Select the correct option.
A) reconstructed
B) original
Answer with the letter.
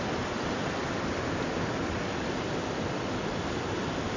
B